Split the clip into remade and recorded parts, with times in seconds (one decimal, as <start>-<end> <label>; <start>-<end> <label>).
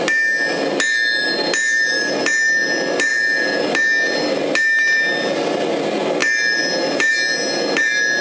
0.0-3.1 recorded; 3.1-3.6 remade; 3.6-8.2 recorded